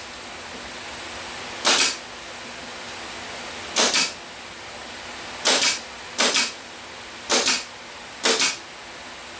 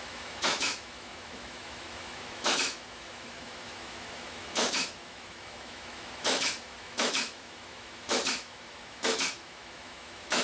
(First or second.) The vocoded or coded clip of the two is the second